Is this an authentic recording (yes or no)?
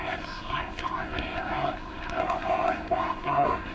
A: no